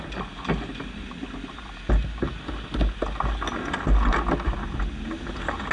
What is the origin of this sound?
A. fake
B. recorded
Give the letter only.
B